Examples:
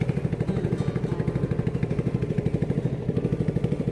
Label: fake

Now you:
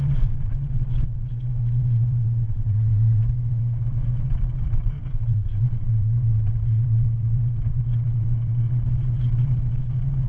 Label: fake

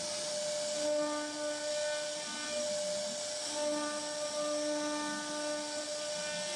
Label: real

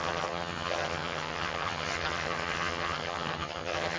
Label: fake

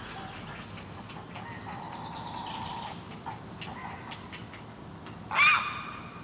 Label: real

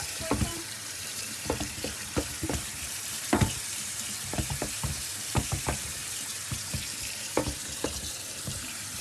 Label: fake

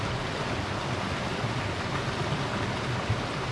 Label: real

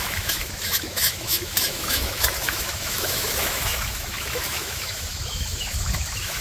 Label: fake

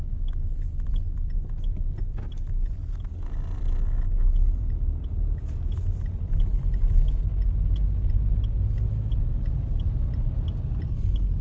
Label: real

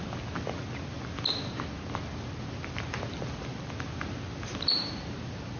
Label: real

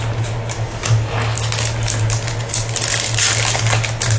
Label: real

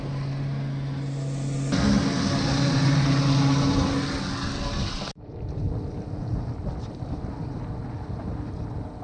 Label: real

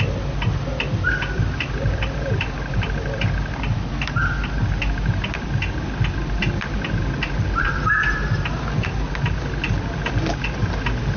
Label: real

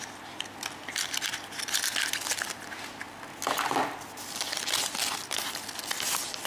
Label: real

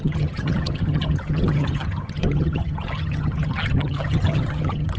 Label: fake